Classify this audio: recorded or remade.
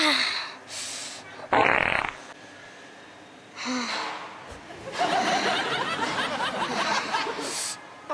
recorded